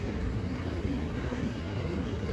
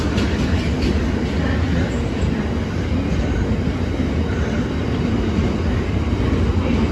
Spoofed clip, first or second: first